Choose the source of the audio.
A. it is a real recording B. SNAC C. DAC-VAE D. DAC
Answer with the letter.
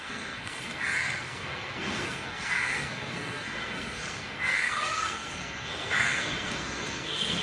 B